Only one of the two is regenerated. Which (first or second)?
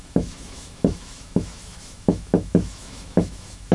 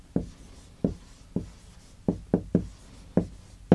first